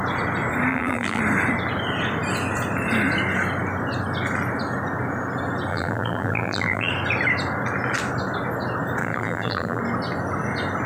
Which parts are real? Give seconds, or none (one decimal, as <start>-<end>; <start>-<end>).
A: 0.0-0.7; 1.2-5.7; 6.9-9.0; 9.8-10.9